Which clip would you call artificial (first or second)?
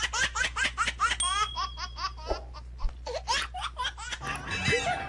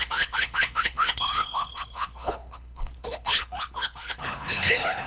second